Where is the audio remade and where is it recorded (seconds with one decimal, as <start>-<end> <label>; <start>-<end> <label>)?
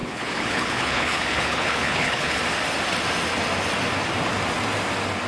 0.0-2.4 remade; 2.4-5.3 recorded